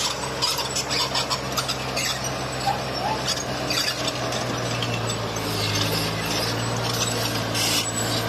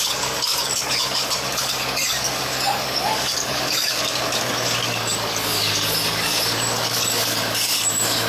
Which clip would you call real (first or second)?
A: first